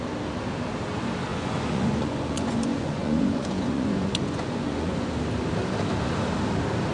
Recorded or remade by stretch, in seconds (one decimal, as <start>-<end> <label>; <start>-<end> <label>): 0.0-1.3 recorded; 1.3-5.1 remade; 5.1-6.9 recorded